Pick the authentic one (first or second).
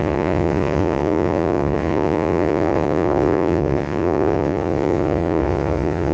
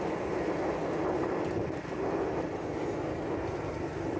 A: second